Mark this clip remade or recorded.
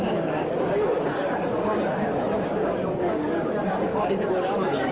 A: remade